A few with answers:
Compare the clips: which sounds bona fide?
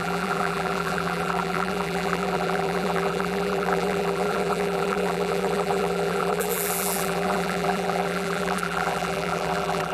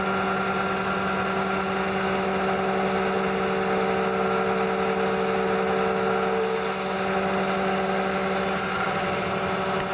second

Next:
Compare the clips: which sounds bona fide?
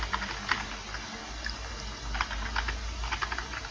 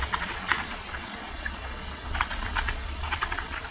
first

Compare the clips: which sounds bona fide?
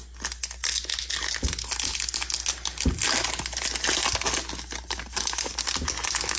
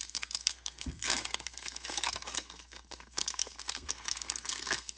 first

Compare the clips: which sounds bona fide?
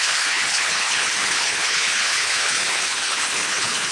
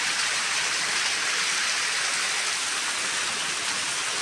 second